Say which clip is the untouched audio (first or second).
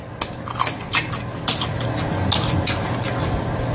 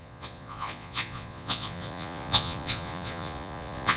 first